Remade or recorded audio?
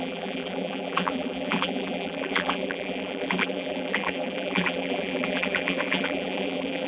remade